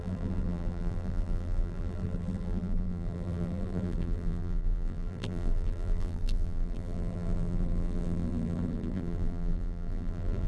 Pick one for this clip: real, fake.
fake